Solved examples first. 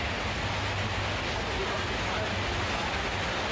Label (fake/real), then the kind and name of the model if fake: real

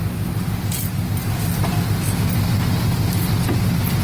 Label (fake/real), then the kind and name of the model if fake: real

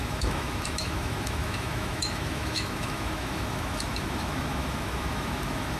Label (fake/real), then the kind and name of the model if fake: fake, autoencoder, DAC-VAE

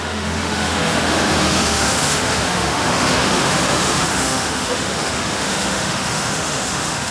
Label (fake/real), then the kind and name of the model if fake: fake, autoencoder, DAC-VAE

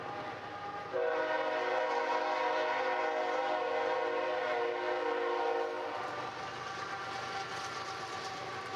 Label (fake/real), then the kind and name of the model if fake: real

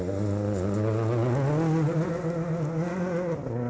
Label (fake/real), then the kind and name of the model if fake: real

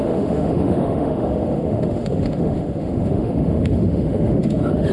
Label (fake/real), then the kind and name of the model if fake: fake, autoencoder, DAC-VAE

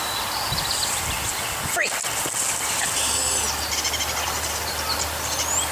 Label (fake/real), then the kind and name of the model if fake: real